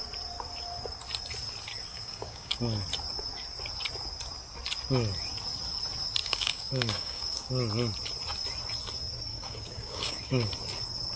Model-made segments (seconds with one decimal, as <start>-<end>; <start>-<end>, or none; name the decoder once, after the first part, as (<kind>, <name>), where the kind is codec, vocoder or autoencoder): 1.9-2.6 (codec, DAC); 6.2-7.5; 9.3-10.5